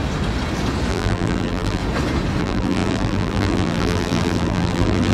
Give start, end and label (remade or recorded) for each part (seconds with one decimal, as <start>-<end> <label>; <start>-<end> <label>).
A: 0.0-0.9 recorded; 0.9-1.8 remade; 1.8-2.4 recorded; 2.4-5.1 remade